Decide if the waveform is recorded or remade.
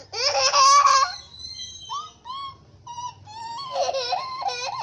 recorded